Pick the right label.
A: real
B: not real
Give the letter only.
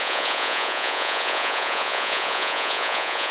B